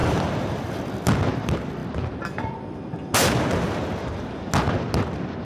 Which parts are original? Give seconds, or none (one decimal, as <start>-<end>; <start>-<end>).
0.0-5.4